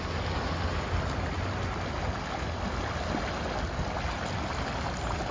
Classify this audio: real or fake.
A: real